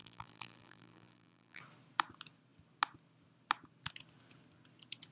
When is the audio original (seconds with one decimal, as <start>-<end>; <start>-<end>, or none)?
1.6-5.1